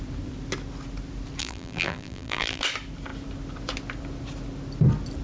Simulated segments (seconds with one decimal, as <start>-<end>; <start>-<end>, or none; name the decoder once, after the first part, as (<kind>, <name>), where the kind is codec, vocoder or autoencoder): 1.4-2.6 (vocoder, BigVGAN v2)